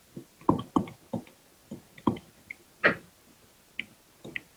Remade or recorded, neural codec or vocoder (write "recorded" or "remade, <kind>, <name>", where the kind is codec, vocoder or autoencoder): recorded